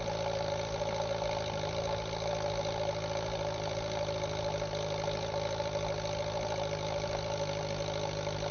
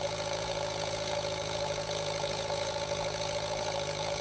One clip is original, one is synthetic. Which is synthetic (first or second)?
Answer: second